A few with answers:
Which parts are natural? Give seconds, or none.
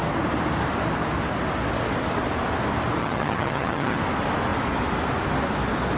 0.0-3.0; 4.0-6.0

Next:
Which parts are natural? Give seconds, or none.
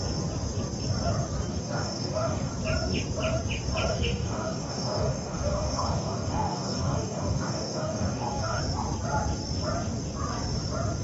0.0-1.5; 2.5-3.9; 8.6-11.0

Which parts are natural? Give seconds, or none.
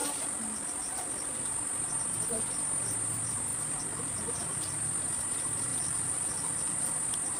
1.4-5.7; 6.9-7.4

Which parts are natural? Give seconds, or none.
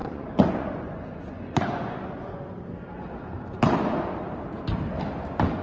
2.4-5.6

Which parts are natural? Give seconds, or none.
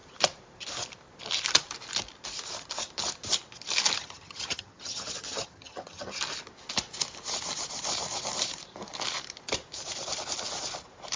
0.0-4.0; 6.2-11.2